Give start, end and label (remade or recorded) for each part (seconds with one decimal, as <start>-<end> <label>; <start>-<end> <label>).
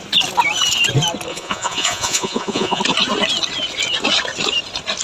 0.0-1.3 recorded; 1.3-2.8 remade; 2.8-5.0 recorded